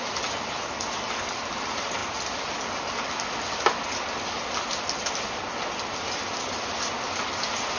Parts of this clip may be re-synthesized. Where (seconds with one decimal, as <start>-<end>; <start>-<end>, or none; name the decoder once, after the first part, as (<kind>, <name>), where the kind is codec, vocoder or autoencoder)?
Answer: none

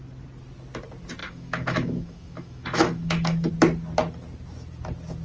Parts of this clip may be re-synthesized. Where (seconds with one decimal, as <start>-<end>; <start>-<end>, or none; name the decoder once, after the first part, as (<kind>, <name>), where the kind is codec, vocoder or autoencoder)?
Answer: 1.2-3.5 (autoencoder, DAC-VAE)